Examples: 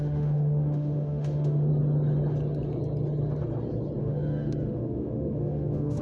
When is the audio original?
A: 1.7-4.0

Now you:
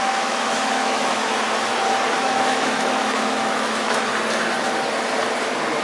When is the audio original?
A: 1.2-2.1; 4.1-5.8

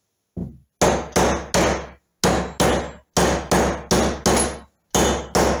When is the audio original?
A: 0.0-5.6

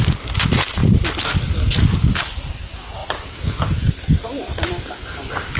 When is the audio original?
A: 0.0-5.6

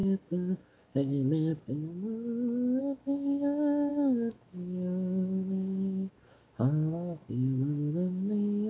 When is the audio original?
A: 1.5-2.8

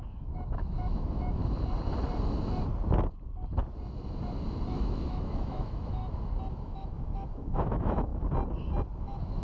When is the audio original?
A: 1.4-4.7; 6.0-6.5; 8.1-9.0

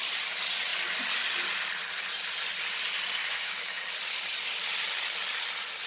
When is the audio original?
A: 0.0-3.2; 3.8-5.9